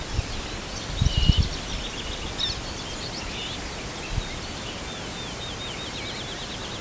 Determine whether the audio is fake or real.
real